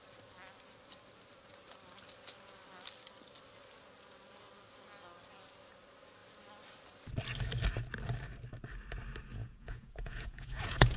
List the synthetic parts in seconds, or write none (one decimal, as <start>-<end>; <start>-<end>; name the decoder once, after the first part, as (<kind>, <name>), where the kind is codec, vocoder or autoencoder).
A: 9.3-11.0 (vocoder, Vocos)